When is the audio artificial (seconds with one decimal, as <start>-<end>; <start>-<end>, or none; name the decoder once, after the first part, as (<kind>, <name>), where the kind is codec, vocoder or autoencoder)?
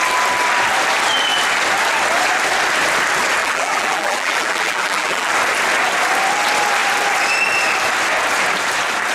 3.4-5.3 (vocoder, BigVGAN v2)